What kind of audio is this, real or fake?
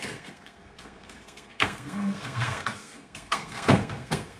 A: fake